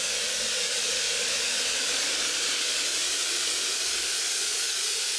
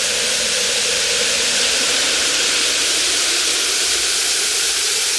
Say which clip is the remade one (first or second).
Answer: first